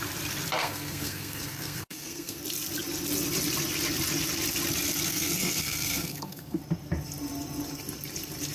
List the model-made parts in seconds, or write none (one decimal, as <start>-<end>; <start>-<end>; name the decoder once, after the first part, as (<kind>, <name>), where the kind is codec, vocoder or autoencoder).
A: 0.6-2.4 (codec, SNAC); 5.1-6.6